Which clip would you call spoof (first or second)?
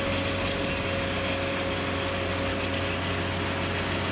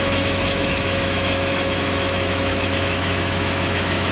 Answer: second